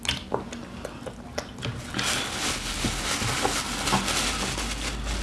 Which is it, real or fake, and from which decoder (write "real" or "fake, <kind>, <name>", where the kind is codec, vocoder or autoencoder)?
real